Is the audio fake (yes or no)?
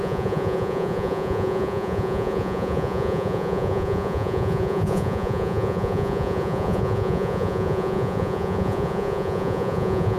yes